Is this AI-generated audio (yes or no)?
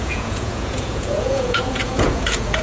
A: yes